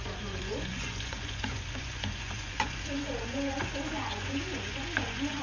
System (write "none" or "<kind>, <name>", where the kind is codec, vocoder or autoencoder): vocoder, Vocos